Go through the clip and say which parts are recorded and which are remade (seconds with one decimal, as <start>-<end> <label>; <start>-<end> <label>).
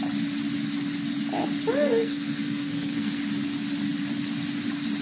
0.0-1.7 recorded; 1.7-3.2 remade; 3.2-5.0 recorded